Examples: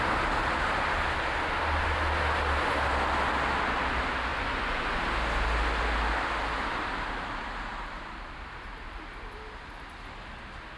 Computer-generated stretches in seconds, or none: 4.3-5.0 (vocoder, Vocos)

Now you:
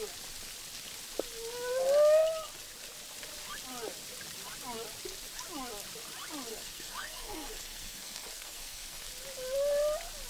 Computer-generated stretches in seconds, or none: 6.5-9.1 (codec, SNAC)

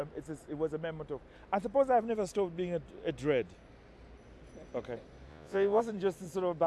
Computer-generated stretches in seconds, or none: 5.3-5.8 (vocoder, Vocos)

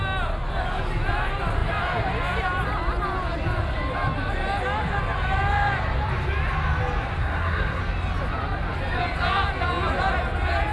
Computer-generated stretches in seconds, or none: 7.2-7.8 (codec, SNAC)

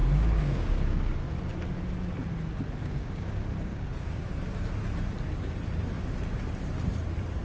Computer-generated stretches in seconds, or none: 0.0-1.1 (codec, DAC); 2.8-4.3

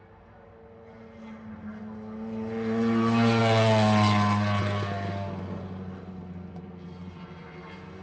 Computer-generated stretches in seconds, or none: none

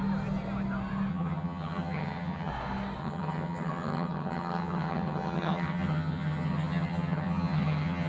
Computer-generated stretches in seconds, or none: 1.1-2.5 (vocoder, HiFi-GAN); 3.0-8.1

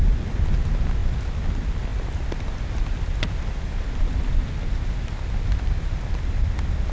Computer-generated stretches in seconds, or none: none